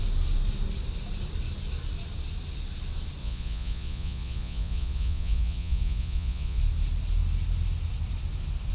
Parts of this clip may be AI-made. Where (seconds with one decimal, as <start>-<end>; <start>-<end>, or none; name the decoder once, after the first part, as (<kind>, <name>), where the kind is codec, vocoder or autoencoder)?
3.2-6.6 (vocoder, Vocos)